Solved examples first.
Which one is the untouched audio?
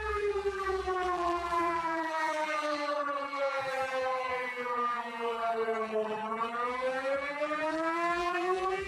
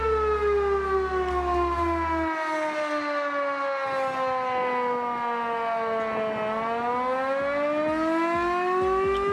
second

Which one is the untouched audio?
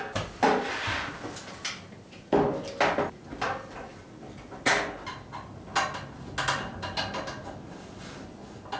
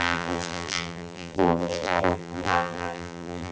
first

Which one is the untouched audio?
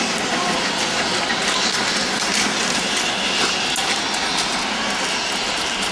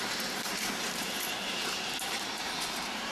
first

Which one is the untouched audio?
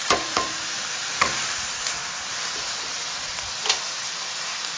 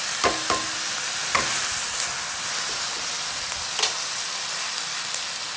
second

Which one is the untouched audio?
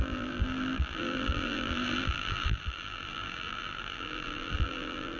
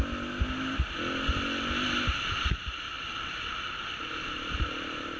second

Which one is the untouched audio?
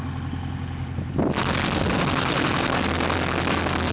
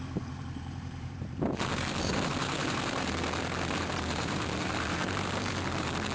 first